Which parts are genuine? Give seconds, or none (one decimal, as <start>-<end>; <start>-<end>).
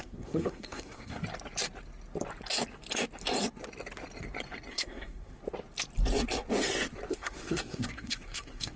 1.2-4.7; 5.4-7.1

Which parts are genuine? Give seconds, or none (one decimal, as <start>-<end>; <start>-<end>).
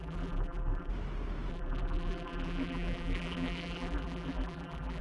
0.9-1.5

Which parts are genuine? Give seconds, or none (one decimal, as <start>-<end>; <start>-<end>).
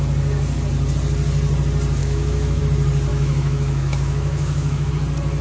0.0-2.0; 2.6-3.1; 4.9-5.4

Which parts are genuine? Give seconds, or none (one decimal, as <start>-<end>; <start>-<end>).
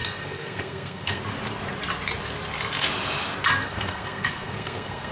1.2-3.6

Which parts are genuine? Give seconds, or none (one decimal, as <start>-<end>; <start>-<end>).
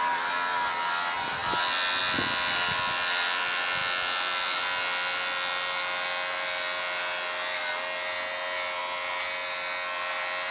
0.0-10.5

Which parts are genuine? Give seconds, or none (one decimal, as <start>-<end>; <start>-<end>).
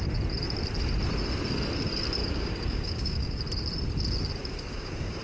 0.0-2.2; 3.4-4.4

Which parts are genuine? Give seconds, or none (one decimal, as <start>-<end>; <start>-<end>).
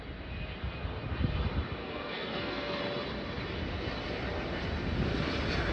0.0-1.8; 2.8-5.7